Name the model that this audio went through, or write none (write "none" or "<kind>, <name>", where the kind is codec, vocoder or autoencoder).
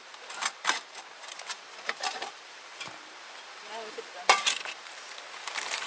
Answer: vocoder, BigVGAN v2